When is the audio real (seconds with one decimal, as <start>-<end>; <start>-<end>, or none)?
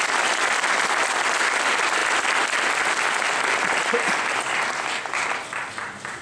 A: 0.0-6.2